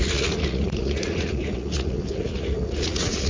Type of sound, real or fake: fake